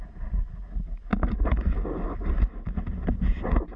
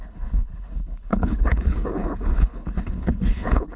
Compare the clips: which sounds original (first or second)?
first